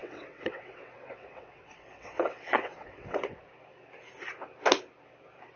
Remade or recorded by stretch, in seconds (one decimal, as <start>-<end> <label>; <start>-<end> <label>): 0.0-3.4 remade; 3.4-5.6 recorded